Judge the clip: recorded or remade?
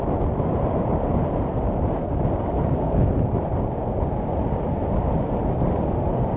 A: recorded